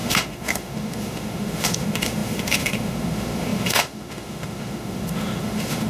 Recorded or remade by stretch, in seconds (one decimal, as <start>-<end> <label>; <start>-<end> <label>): 0.0-5.9 remade